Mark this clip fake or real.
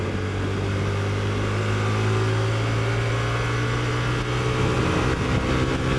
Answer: real